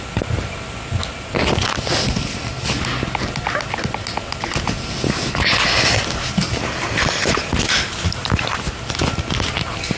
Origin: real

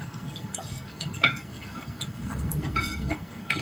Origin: fake